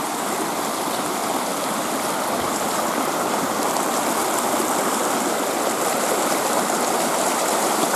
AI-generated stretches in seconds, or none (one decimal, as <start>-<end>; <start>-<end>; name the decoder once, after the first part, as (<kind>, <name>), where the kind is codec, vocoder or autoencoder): none